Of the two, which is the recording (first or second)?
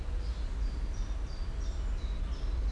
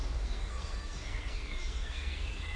first